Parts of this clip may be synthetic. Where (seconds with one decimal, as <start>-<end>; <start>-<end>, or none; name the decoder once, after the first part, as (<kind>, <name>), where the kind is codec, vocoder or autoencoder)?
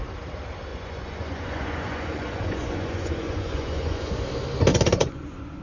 0.7-4.1 (vocoder, Vocos); 4.7-5.6